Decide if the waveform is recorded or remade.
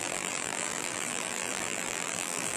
remade